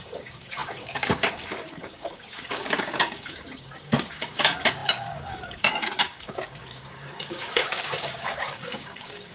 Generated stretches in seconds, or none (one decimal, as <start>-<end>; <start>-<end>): 0.0-9.3